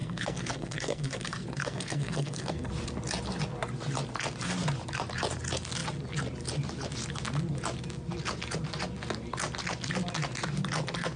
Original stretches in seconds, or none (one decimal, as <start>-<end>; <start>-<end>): 2.7-11.2